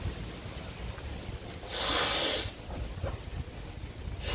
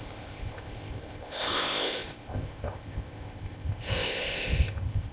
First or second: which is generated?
second